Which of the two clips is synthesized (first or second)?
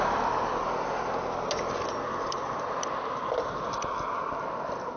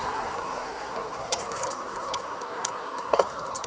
second